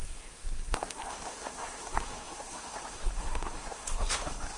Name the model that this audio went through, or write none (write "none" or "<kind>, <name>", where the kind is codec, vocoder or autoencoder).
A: codec, SNAC